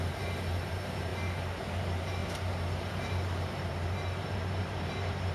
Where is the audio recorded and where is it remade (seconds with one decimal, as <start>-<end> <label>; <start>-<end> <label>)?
0.0-1.1 remade; 1.1-1.8 recorded; 1.8-5.3 remade